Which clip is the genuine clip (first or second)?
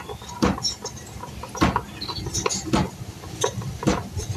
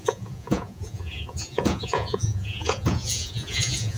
first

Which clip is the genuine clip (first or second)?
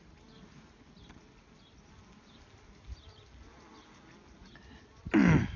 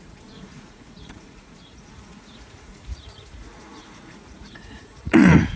first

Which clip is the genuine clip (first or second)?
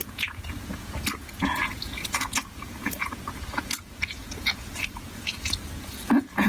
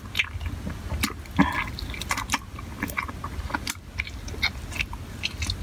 second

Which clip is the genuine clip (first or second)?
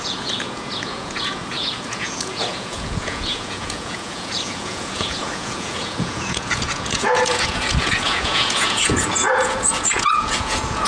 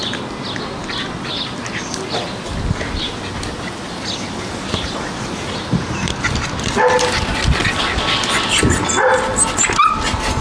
second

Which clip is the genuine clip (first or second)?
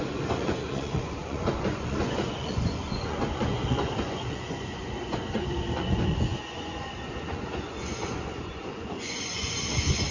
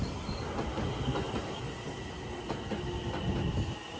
second